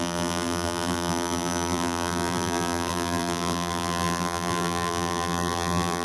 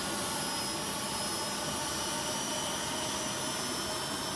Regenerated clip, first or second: first